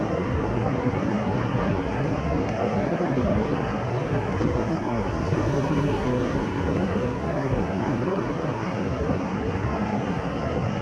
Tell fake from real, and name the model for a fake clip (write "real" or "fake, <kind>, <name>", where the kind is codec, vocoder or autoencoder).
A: fake, codec, SNAC